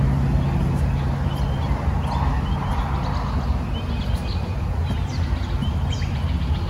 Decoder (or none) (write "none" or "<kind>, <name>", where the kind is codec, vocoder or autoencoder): none